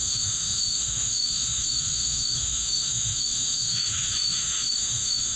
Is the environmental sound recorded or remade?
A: remade